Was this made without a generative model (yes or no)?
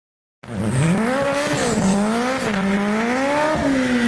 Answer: yes